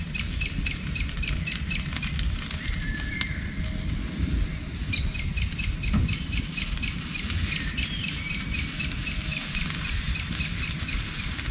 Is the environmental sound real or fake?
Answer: real